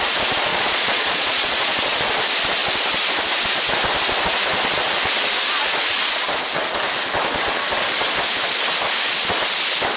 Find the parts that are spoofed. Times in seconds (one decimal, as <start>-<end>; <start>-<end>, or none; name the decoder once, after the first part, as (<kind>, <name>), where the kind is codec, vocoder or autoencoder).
0.5-1.8 (vocoder, Vocos)